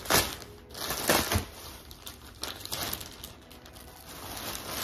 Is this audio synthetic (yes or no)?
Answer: no